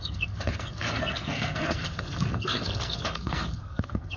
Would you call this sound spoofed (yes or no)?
yes